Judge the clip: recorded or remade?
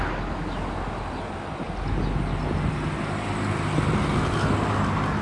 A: recorded